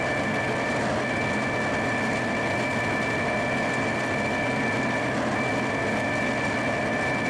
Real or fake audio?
real